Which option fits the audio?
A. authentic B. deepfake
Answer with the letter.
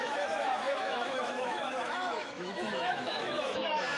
B